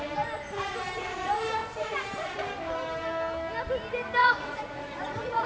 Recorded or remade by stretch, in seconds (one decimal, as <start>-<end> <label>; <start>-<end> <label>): 0.0-4.2 recorded; 4.2-5.5 remade